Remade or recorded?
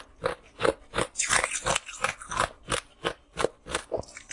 recorded